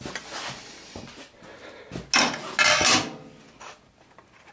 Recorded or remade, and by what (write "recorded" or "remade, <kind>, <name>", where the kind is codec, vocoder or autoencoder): recorded